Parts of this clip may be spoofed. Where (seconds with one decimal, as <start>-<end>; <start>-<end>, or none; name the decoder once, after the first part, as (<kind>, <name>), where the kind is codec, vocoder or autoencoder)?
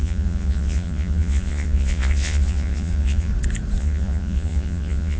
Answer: 0.0-3.3 (vocoder, Vocos); 3.8-5.2